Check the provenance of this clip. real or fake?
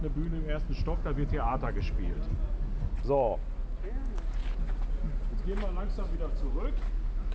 real